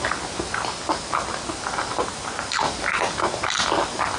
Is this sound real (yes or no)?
yes